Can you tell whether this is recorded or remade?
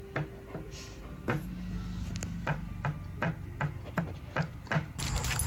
recorded